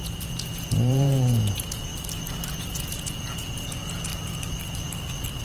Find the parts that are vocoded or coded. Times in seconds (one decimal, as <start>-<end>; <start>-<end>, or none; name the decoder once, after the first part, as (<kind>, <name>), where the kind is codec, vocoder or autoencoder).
0.0-1.9 (vocoder, Vocos); 2.6-4.1